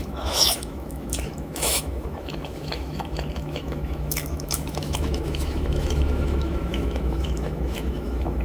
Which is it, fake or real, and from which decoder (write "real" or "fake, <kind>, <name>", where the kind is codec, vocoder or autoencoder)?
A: fake, autoencoder, DAC-VAE